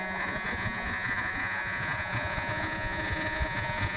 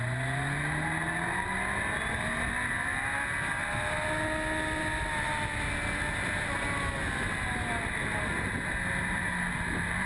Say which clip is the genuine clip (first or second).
second